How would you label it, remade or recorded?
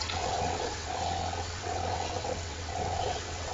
remade